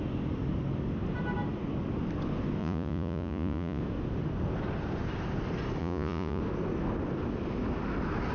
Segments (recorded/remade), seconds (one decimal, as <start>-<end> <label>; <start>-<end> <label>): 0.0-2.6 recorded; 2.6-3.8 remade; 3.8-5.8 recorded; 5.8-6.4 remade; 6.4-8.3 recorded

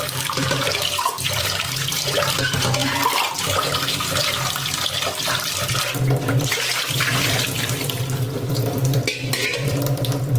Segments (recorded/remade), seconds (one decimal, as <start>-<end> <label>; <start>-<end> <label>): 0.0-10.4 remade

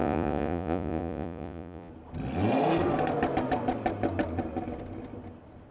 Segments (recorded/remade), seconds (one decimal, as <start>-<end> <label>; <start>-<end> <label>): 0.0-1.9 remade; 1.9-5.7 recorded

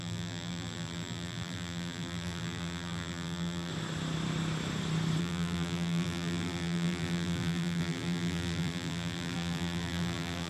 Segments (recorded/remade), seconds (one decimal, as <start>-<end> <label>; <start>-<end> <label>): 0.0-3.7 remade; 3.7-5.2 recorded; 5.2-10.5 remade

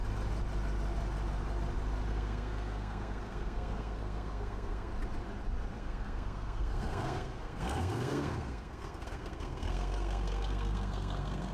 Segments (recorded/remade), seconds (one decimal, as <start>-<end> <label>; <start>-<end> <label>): 0.0-2.1 recorded; 2.1-4.9 remade; 4.9-5.8 recorded; 5.8-11.5 remade

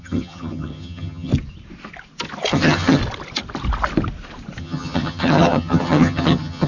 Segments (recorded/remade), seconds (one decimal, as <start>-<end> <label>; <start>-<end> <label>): 0.0-1.3 remade; 1.3-2.5 recorded; 2.5-3.0 remade; 3.0-4.6 recorded; 4.6-6.7 remade

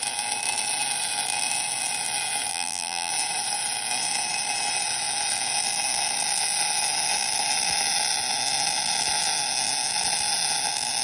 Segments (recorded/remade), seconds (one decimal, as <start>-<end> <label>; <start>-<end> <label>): 0.0-2.5 recorded; 2.5-3.1 remade; 3.1-11.0 recorded